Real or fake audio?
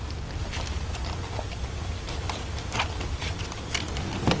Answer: fake